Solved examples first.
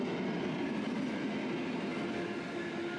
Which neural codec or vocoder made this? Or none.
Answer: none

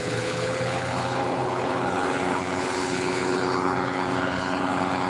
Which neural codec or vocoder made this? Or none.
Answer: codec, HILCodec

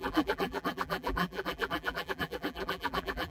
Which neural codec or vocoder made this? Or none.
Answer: vocoder, BigVGAN v2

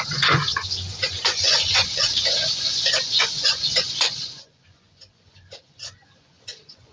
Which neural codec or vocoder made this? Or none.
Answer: vocoder, Vocos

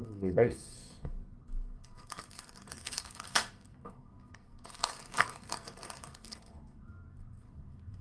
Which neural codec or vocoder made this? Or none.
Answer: codec, SNAC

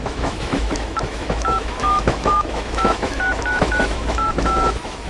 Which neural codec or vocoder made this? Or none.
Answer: autoencoder, DAC-VAE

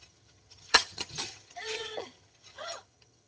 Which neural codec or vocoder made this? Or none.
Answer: vocoder, HiFi-GAN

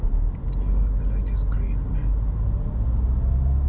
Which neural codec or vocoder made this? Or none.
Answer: none